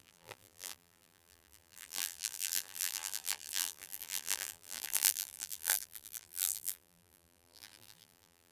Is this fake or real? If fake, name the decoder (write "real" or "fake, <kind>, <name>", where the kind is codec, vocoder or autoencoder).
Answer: fake, vocoder, BigVGAN v2